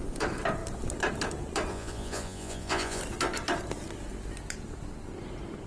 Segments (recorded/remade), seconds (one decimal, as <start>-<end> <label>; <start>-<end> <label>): 0.0-1.7 recorded; 1.7-3.0 remade; 3.0-5.7 recorded